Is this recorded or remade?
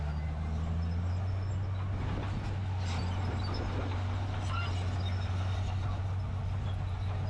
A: recorded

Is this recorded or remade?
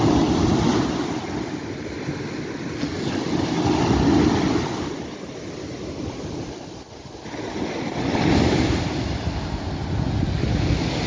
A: recorded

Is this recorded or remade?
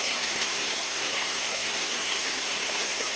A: remade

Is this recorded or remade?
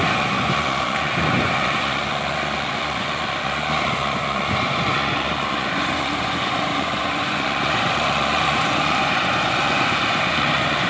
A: remade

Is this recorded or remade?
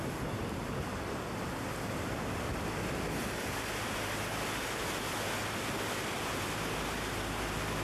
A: recorded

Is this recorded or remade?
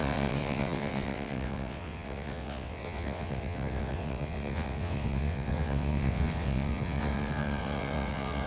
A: remade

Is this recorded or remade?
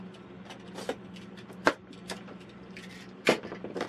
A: remade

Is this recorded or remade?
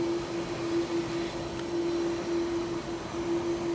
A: recorded